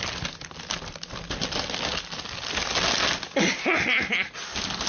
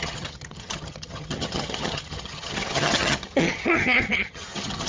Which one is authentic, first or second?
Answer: first